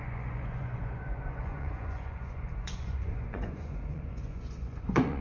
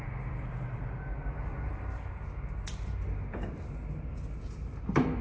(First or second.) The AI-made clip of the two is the first